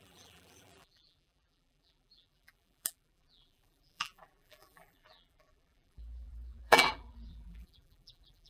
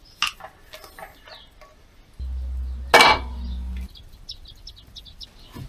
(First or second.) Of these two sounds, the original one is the second